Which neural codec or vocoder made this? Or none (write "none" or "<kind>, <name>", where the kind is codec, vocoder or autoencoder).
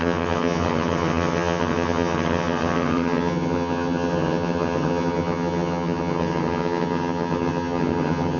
vocoder, HiFi-GAN